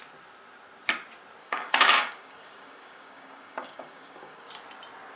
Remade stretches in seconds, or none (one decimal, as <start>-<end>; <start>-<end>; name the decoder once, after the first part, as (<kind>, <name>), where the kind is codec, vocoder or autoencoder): 1.4-4.5 (codec, DAC)